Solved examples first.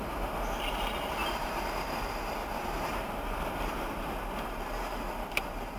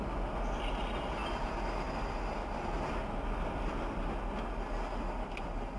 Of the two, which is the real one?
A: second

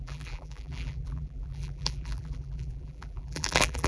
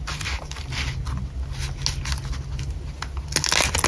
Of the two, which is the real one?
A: second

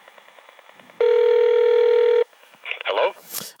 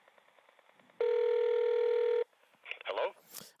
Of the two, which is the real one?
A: second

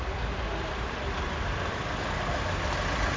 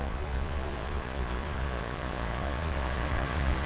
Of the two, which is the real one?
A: first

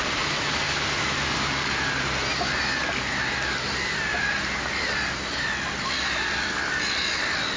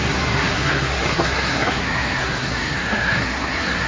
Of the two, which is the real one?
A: first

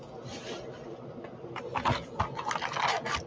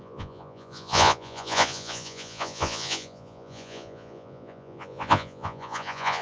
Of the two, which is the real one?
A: first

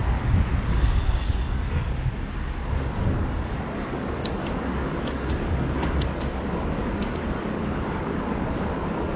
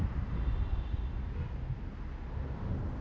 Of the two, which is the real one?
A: second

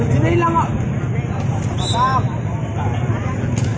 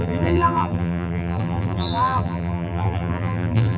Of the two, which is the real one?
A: first